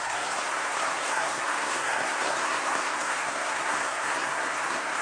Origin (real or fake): fake